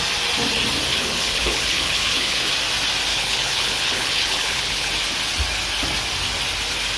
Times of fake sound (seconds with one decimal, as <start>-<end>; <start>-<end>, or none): 0.9-2.5; 3.1-4.9